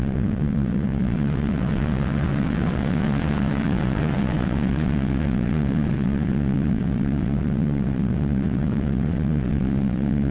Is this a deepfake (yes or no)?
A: yes